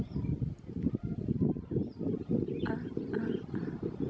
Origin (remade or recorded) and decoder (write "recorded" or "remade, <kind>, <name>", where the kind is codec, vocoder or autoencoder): remade, vocoder, BigVGAN v2